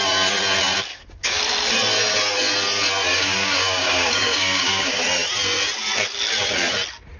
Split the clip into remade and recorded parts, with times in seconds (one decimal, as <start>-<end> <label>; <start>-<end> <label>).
0.0-0.9 recorded; 0.9-1.4 remade; 1.4-3.1 recorded; 3.1-5.0 remade; 5.0-7.2 recorded